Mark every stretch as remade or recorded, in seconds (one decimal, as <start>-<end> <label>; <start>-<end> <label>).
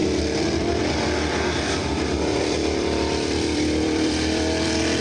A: 0.0-0.8 remade; 0.8-1.8 recorded; 1.8-5.0 remade